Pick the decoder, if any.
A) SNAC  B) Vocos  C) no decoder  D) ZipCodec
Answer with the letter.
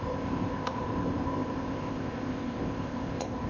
D